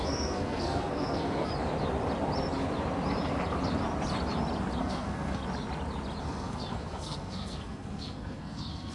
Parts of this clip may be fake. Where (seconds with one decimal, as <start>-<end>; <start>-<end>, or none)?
0.0-1.5; 4.8-5.4; 6.2-8.9